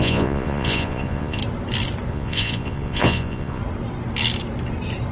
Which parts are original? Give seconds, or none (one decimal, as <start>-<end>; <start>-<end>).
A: 1.4-2.1; 3.6-5.1